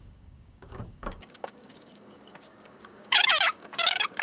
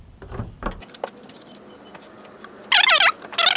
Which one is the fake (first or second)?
first